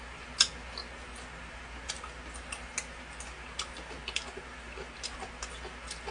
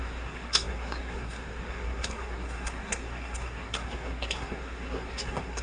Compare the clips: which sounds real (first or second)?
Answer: first